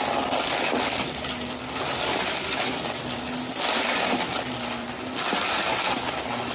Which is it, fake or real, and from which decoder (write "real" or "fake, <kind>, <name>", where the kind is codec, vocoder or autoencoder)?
real